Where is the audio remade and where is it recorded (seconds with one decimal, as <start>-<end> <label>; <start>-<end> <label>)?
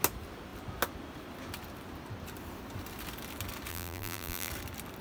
0.0-3.7 recorded; 3.7-4.5 remade; 4.5-5.0 recorded